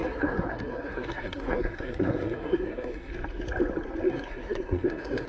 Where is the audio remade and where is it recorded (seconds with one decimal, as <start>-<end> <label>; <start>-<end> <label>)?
0.0-3.1 remade; 3.1-4.1 recorded; 4.1-5.3 remade